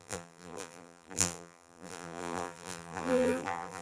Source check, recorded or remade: remade